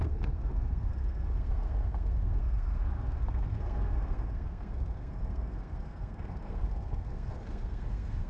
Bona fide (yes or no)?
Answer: no